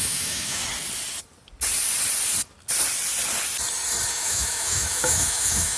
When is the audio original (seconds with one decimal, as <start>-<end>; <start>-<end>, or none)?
0.6-4.1

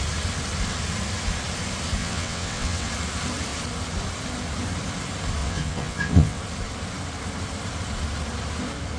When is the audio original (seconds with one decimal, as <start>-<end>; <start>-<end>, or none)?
0.0-2.0; 2.9-5.4; 6.4-9.0

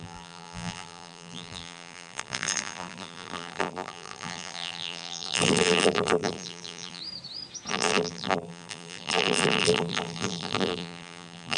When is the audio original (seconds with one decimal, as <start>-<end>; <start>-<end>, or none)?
7.0-7.7

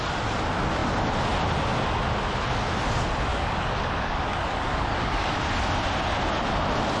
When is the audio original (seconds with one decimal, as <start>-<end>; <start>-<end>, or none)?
0.0-3.3; 5.3-7.0